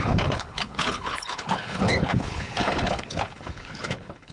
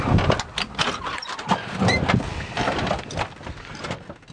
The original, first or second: second